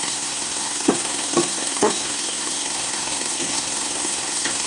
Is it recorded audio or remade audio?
remade